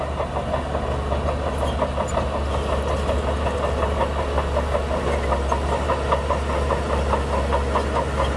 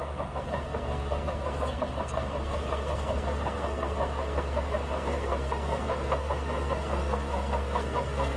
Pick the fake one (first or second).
second